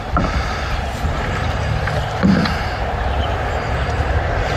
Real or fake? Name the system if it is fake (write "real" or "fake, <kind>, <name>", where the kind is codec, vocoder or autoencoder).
fake, vocoder, BigVGAN v2